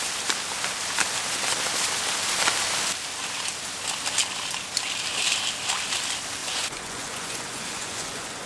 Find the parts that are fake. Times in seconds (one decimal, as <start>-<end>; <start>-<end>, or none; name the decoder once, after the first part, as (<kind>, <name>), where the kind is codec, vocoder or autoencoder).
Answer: 6.4-8.5 (vocoder, Vocos)